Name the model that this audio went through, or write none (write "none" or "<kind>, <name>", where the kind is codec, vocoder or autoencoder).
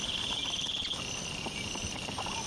none